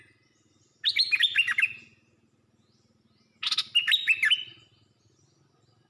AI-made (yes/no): no